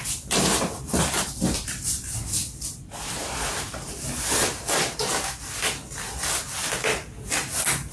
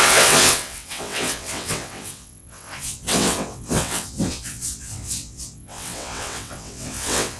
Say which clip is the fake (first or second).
second